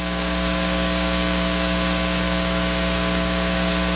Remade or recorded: remade